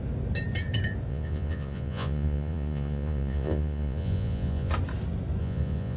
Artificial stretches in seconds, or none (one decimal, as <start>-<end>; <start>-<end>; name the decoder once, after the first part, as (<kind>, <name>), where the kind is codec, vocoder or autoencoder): 1.1-4.7 (vocoder, Vocos); 5.4-6.0